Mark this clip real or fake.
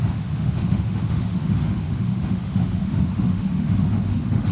fake